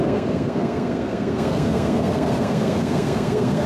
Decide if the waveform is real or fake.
fake